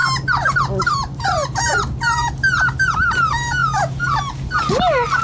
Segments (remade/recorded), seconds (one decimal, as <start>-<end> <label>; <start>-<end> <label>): 0.0-5.2 recorded